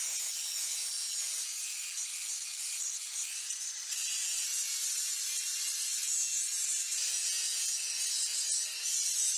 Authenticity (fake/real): real